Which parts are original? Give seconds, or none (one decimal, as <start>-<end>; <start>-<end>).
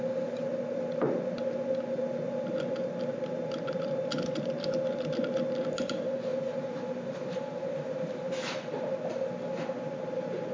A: 0.0-6.3; 8.0-10.5